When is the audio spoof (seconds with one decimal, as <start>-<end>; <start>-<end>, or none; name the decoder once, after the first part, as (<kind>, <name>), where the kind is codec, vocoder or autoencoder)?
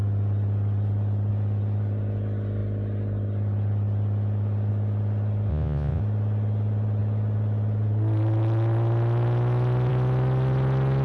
5.5-6.0 (vocoder, Vocos)